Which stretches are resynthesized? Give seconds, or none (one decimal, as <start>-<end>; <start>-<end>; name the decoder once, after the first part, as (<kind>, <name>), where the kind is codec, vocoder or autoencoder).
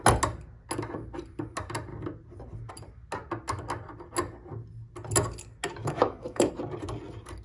5.8-6.5 (autoencoder, DAC-VAE)